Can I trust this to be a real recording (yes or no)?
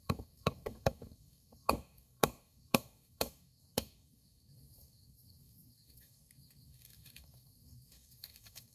no